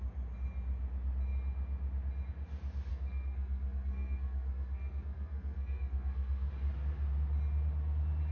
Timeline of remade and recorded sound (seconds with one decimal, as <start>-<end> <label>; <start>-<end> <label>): 0.0-2.9 recorded; 2.9-6.5 remade; 6.5-8.3 recorded